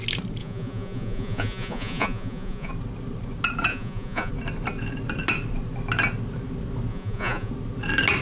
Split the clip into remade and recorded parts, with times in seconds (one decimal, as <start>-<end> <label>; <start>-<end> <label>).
0.0-0.4 recorded; 0.4-2.7 remade; 2.7-3.7 recorded; 3.7-4.3 remade; 4.3-6.9 recorded; 6.9-7.5 remade; 7.5-8.2 recorded